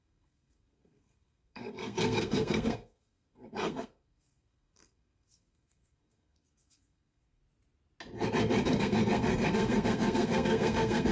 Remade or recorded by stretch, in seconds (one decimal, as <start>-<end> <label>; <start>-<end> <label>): 0.0-7.4 remade; 7.4-8.8 recorded; 8.8-11.1 remade